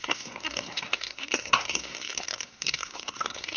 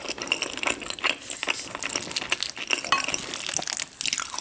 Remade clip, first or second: first